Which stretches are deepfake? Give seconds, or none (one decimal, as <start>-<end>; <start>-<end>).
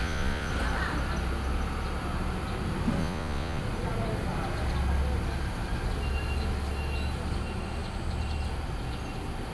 0.0-0.5; 3.0-3.6